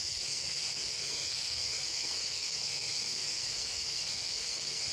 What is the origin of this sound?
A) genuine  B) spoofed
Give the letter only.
B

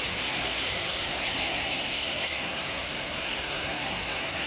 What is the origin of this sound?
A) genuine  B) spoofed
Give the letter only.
B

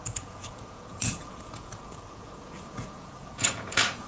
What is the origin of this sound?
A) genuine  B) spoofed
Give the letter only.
B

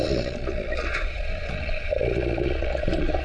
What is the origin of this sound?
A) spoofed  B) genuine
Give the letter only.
A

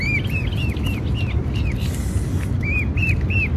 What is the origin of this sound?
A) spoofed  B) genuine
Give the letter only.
B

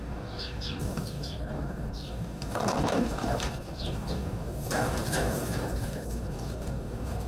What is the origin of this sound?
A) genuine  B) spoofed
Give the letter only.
B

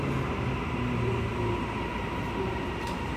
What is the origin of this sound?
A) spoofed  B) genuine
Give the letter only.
B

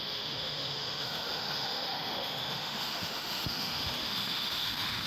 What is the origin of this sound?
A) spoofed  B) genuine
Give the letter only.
A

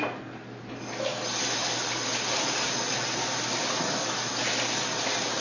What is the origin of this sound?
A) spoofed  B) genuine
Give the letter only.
B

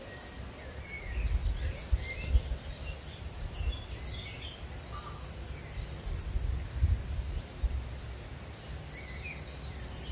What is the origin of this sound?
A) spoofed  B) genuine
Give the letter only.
B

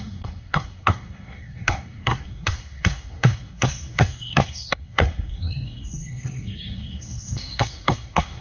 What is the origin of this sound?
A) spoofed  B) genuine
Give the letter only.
A